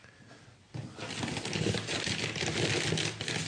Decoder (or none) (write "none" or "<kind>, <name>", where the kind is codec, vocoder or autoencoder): none